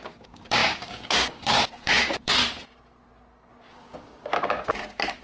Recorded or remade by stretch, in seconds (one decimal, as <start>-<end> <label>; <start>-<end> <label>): 0.0-2.4 remade; 2.4-3.5 recorded; 3.5-5.2 remade